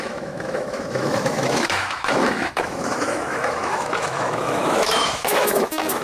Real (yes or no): no